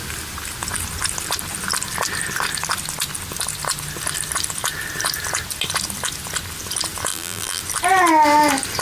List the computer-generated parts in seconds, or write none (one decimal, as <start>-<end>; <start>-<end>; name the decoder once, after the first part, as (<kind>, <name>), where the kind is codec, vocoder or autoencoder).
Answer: 7.1-7.6 (vocoder, BigVGAN v2)